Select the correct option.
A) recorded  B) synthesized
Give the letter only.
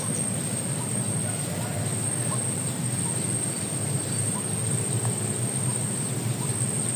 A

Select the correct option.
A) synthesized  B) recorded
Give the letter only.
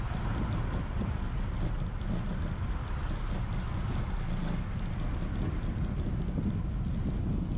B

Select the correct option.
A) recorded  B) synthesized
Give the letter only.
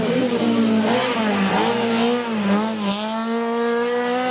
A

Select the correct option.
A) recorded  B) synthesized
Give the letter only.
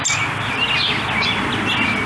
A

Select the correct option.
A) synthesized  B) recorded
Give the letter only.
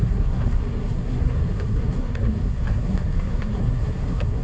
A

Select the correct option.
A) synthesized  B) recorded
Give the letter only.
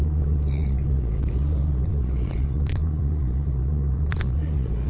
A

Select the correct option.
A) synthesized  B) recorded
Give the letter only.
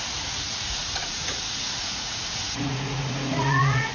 A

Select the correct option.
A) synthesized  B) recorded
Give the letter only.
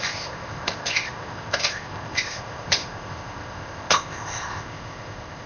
A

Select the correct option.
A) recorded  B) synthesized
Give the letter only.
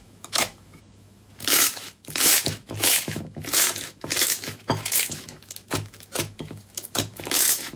B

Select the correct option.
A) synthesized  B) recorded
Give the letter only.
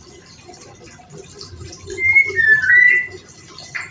B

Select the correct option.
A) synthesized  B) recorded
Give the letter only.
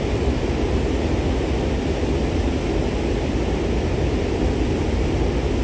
B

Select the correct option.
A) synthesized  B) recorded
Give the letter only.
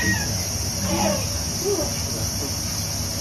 B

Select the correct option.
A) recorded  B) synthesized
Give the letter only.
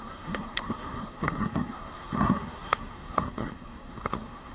B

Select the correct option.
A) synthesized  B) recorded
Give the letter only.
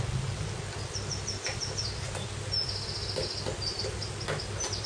B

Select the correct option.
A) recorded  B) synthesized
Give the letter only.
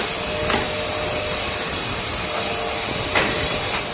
A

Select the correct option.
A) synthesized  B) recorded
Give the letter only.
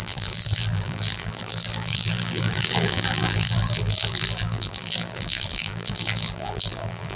A